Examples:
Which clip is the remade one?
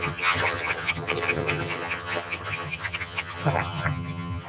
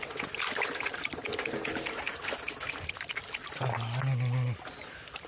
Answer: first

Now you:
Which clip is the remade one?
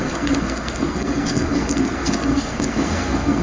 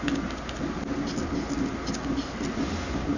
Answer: first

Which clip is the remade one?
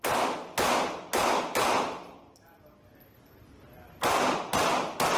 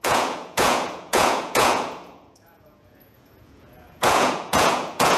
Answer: second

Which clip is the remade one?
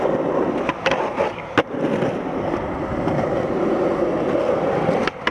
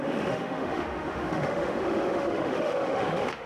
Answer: second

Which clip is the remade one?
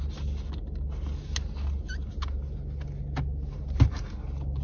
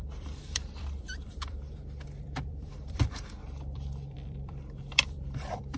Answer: second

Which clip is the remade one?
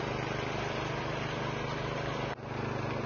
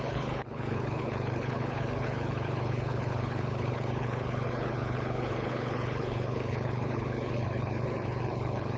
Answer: second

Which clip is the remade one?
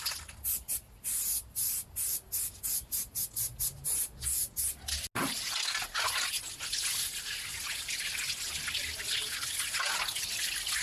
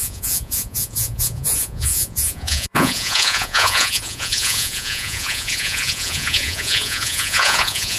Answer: second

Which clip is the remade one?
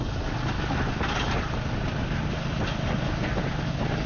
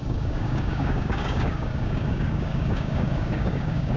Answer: second